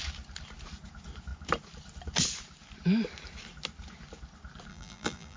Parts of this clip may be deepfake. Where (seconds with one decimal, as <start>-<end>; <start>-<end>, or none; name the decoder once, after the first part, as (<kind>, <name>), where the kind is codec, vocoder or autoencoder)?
4.7-5.4 (vocoder, BigVGAN v2)